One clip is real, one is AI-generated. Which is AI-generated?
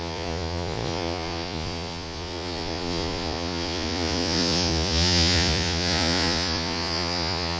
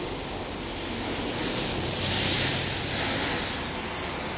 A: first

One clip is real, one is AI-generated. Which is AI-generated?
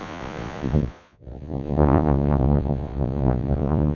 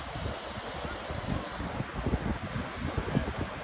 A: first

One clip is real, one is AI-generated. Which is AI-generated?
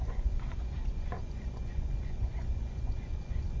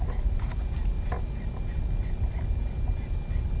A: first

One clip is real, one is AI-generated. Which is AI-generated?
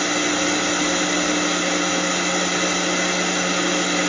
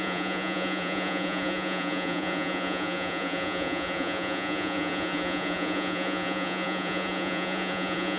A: second